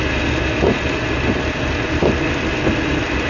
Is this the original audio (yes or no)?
yes